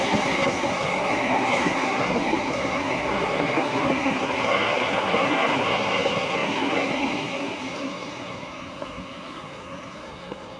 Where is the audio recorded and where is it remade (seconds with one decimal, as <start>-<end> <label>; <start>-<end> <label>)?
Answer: 0.0-10.6 remade